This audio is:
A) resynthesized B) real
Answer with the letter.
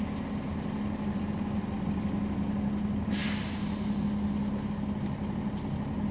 B